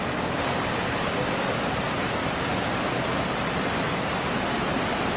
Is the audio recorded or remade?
recorded